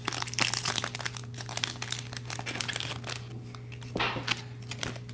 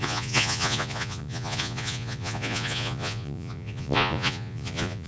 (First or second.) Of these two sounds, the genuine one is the first